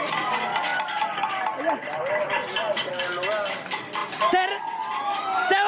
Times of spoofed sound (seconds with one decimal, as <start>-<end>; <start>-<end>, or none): none